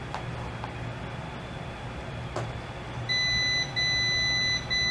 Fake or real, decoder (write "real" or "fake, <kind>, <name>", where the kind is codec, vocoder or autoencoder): real